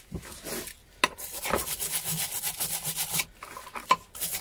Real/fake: real